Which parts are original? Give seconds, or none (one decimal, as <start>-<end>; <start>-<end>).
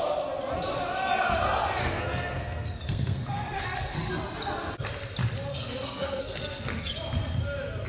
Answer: 0.0-1.8; 4.1-5.5; 7.0-7.9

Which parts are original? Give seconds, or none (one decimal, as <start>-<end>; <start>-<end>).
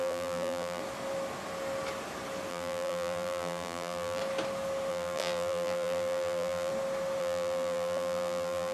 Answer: 0.8-2.5; 4.2-4.9; 6.7-7.2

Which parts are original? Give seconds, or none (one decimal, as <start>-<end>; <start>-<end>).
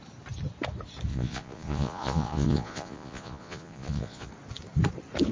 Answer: 0.0-1.1; 4.3-5.3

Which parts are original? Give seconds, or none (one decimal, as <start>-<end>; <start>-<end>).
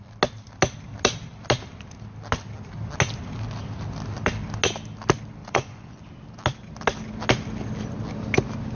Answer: 0.0-5.4; 6.0-8.7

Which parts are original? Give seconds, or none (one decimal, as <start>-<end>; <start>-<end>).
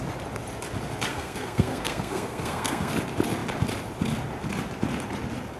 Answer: 0.0-1.1; 2.9-5.6